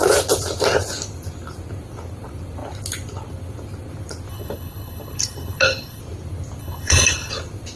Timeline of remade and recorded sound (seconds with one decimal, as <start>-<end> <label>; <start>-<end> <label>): 0.0-4.3 recorded; 4.3-6.0 remade; 6.0-6.6 recorded; 6.6-7.3 remade; 7.3-7.8 recorded